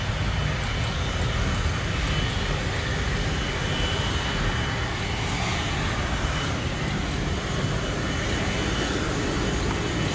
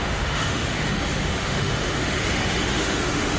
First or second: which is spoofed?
second